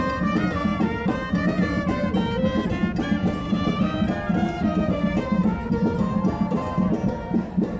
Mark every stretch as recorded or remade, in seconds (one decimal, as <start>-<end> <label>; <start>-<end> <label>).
0.0-7.8 recorded